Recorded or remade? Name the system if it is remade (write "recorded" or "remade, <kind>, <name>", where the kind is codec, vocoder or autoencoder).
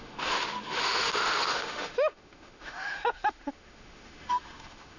remade, autoencoder, DAC-VAE